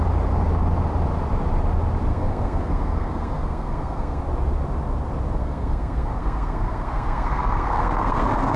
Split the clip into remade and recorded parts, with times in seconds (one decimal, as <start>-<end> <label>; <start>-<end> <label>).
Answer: 0.0-2.1 recorded; 2.1-4.2 remade; 4.2-5.4 recorded; 5.4-8.6 remade